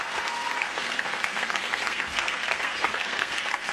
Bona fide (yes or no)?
no